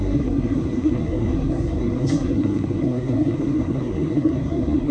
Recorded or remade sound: remade